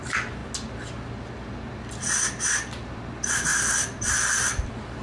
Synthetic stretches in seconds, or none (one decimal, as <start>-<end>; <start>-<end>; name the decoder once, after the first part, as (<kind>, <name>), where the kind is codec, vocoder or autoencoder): 0.0-0.4 (vocoder, BigVGAN v2); 1.9-5.0